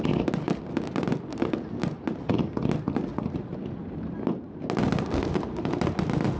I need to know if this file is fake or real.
real